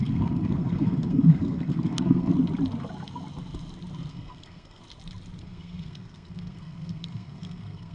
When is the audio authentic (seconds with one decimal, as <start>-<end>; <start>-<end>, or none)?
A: 2.3-4.1; 4.8-5.4